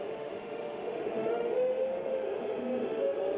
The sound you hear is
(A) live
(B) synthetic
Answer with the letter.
B